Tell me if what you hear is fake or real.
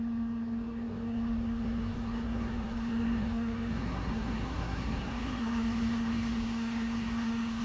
fake